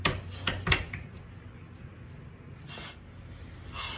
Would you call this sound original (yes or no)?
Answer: yes